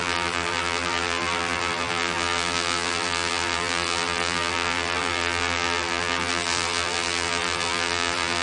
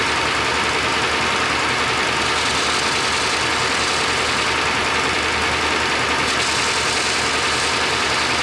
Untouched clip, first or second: second